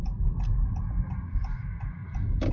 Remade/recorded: recorded